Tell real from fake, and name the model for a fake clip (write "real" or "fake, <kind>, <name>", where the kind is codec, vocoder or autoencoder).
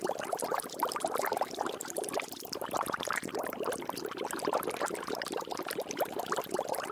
fake, vocoder, BigVGAN v2